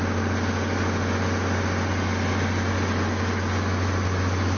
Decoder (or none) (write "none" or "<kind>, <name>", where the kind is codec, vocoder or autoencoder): none